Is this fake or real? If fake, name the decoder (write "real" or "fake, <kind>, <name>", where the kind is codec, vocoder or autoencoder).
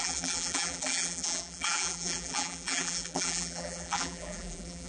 fake, vocoder, BigVGAN v2